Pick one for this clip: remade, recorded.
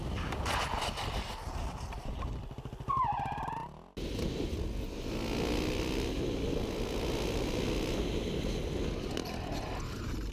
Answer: recorded